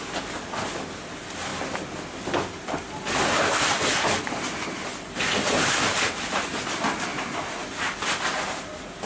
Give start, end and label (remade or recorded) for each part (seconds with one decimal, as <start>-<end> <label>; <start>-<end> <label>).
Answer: 0.0-9.1 recorded